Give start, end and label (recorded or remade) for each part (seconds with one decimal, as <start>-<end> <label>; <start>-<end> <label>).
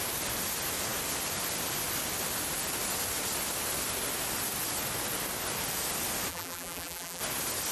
0.0-6.3 recorded; 6.3-7.2 remade; 7.2-7.7 recorded